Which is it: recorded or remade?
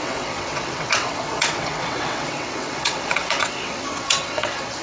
remade